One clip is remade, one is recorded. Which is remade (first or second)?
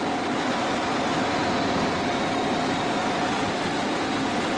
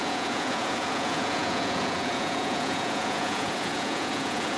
second